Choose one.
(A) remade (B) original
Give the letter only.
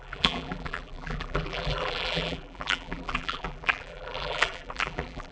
A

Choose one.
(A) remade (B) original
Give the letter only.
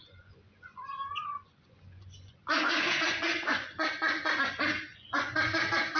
A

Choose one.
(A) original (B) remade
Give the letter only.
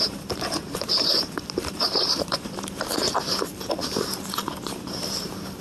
B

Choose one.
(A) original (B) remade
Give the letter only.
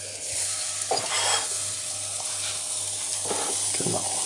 A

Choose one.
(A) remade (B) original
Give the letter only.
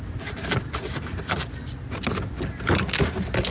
B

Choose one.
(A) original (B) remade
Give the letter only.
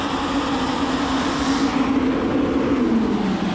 A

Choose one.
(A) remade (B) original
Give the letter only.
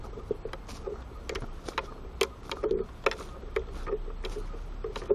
B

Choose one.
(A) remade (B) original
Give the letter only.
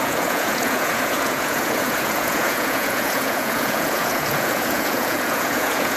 A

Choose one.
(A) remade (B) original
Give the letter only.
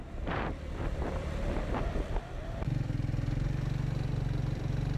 A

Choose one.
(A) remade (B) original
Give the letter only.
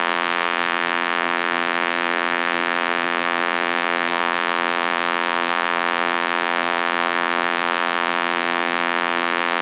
A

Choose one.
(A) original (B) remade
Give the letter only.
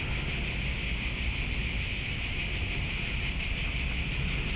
A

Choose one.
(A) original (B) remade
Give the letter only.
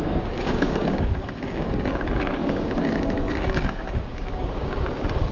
B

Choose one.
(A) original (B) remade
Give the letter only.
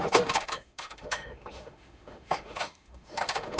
B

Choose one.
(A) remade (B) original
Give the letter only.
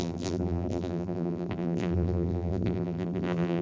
A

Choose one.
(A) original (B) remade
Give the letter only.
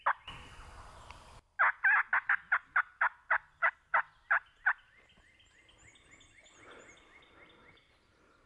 A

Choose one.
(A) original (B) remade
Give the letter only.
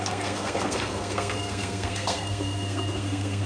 B